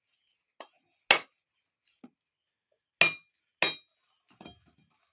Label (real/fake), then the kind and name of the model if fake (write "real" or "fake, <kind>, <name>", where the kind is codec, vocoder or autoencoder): real